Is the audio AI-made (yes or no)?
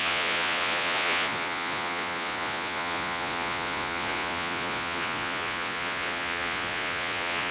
yes